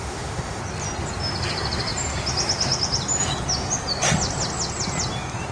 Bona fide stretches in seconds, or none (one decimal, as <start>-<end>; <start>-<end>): 0.6-5.5